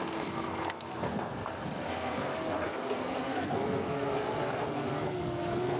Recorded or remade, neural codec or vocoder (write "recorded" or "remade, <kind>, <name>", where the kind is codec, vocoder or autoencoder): remade, codec, SNAC